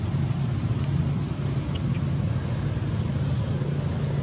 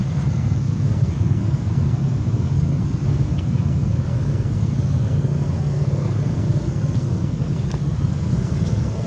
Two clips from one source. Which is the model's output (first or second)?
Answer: second